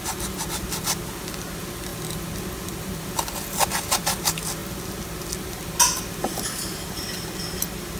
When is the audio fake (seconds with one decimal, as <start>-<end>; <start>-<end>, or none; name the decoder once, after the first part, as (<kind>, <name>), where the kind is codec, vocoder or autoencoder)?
none